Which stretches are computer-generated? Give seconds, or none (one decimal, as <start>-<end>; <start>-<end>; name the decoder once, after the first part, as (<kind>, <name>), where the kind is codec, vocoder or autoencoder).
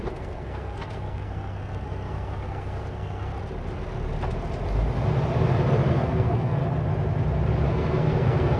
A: 0.0-3.3 (codec, SNAC); 5.9-6.6; 7.7-8.6